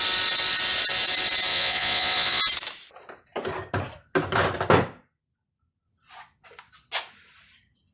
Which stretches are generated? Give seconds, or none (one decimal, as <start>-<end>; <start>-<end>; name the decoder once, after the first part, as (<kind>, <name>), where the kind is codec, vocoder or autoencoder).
1.5-2.4 (vocoder, Vocos)